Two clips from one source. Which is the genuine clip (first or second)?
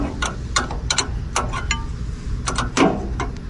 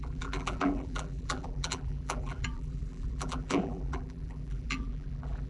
first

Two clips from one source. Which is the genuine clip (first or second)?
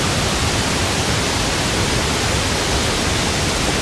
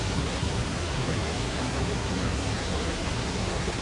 first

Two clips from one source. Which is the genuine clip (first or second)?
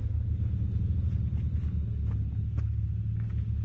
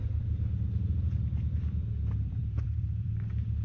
first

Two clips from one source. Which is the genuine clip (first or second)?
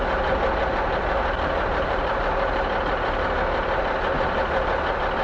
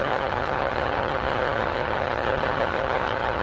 first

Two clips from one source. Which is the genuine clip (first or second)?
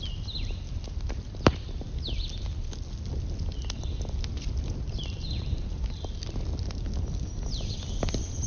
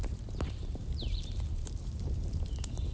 first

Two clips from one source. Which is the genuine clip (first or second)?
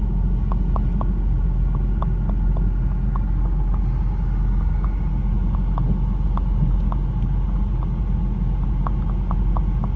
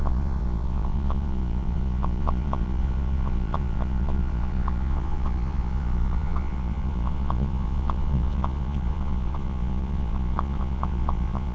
first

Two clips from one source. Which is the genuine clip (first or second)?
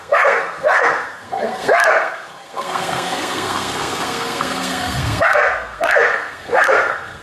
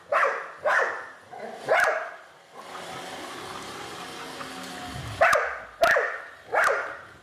second